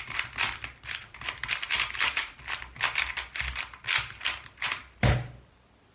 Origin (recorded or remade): recorded